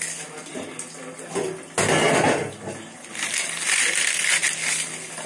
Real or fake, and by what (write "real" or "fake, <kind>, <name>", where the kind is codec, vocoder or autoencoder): real